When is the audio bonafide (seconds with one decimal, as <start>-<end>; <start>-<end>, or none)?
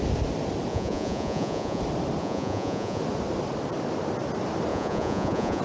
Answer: 0.0-0.7; 1.8-2.2; 3.0-4.7